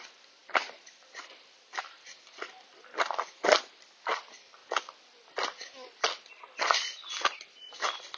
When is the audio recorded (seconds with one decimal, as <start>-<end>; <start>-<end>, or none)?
0.0-0.4; 1.0-8.2